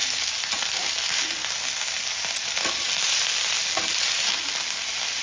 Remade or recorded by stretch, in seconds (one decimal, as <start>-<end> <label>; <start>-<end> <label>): 0.0-5.2 recorded